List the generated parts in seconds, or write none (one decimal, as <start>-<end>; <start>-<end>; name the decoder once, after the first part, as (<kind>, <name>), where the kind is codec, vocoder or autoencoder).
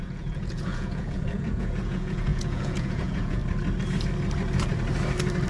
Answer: 0.0-3.4 (vocoder, Vocos)